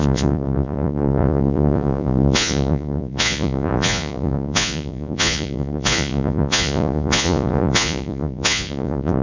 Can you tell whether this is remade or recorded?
remade